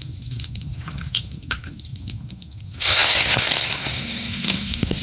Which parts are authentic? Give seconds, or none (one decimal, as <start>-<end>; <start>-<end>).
none